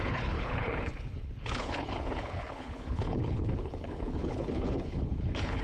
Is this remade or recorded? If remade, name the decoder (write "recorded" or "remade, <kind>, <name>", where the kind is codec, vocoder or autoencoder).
remade, codec, HILCodec